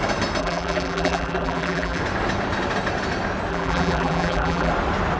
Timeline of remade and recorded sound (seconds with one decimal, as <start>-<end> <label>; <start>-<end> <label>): 0.0-0.4 recorded; 0.4-2.0 remade; 2.0-3.5 recorded; 3.5-4.7 remade; 4.7-5.2 recorded